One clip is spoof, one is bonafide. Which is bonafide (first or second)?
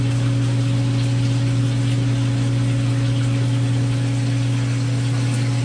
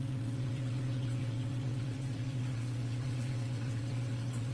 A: first